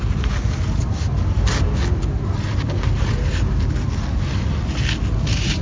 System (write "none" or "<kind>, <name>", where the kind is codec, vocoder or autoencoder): none